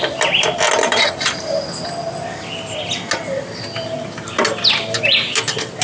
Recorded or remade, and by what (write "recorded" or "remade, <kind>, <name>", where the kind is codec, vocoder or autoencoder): recorded